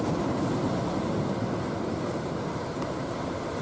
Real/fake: real